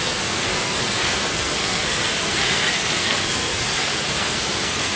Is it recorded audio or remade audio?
remade